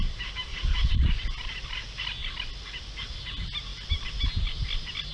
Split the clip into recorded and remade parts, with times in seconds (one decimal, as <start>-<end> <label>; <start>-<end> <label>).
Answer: 0.0-0.5 recorded; 0.5-1.1 remade; 1.1-5.1 recorded